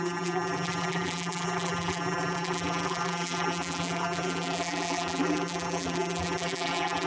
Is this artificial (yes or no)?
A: yes